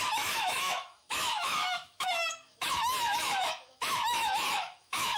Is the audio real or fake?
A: fake